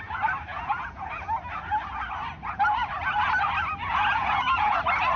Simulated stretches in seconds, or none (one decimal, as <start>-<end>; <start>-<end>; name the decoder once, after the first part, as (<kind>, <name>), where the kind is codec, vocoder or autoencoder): 0.5-1.1 (vocoder, Vocos); 3.8-4.8